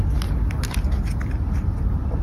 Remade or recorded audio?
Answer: recorded